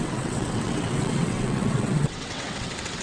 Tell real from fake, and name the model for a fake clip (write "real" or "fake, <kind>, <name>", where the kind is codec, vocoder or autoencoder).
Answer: fake, vocoder, WaveNeXt